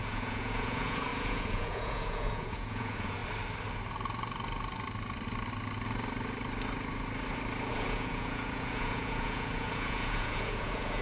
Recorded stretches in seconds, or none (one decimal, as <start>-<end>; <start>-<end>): 3.2-7.7